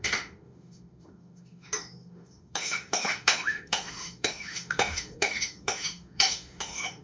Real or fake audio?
fake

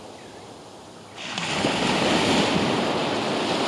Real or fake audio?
real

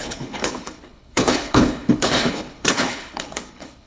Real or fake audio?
fake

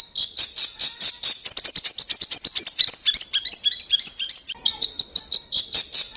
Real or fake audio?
real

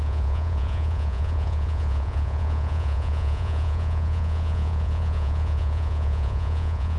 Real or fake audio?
fake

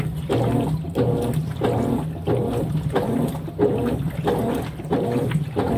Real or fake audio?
real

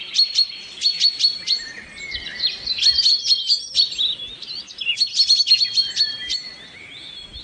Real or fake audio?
real